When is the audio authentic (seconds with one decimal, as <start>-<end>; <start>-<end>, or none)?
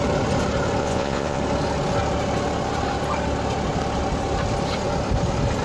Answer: 0.0-0.8; 1.4-5.6